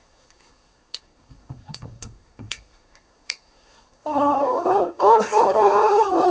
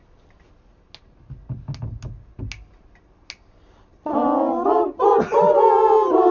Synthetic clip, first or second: first